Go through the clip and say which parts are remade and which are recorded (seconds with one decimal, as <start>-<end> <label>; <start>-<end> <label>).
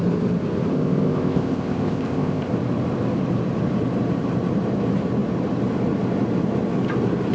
0.0-0.7 recorded; 0.7-2.5 remade; 2.5-7.3 recorded